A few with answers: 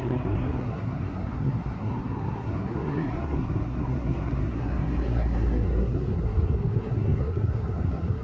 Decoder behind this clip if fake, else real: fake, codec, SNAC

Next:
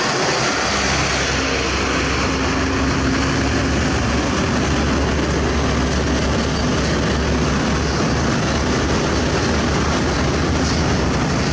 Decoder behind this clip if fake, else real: real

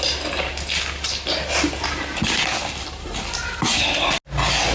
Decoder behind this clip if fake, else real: real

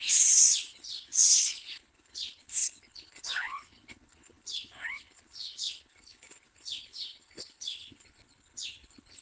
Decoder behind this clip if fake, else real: fake, codec, HILCodec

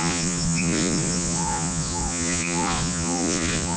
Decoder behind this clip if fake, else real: fake, vocoder, Vocos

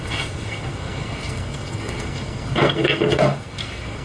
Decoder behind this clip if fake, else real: fake, codec, SNAC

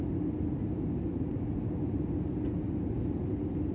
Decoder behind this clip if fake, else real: real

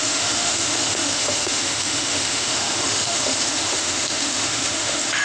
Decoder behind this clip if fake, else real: fake, autoencoder, DAC-VAE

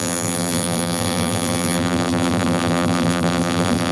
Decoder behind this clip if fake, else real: fake, vocoder, BigVGAN v2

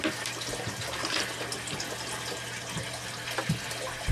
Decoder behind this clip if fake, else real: real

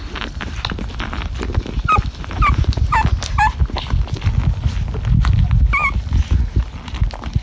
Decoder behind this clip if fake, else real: real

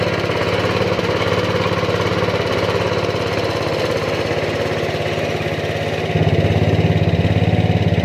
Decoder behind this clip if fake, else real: real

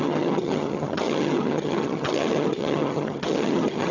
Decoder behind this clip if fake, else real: fake, vocoder, HiFi-GAN